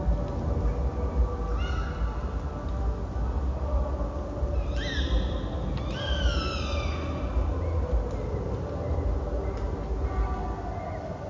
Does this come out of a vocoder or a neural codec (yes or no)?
no